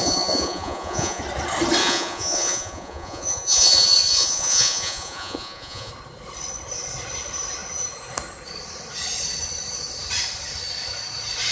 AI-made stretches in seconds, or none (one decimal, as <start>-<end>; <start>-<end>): 0.0-1.2; 1.8-5.9